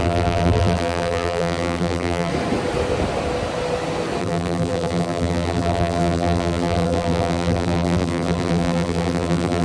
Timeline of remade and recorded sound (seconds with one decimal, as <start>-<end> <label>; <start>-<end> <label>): 0.0-2.3 remade; 2.3-4.2 recorded; 4.2-9.6 remade